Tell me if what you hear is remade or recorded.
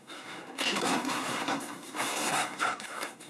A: remade